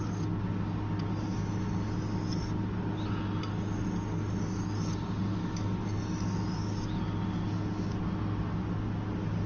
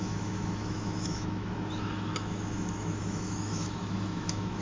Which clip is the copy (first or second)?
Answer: second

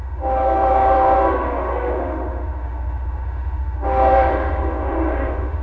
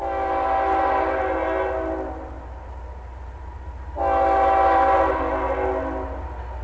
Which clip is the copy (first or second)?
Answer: first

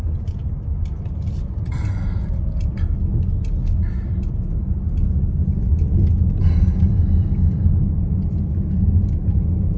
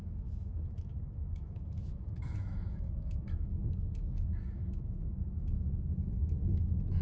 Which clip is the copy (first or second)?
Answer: second